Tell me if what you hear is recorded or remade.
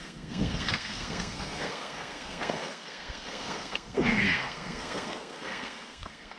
remade